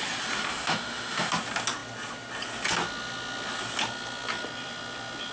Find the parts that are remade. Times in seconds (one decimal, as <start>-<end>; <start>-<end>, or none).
0.5-1.3